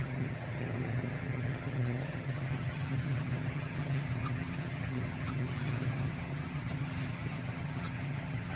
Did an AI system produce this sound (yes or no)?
yes